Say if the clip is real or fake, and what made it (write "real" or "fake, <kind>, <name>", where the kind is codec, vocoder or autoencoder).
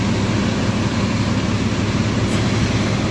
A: real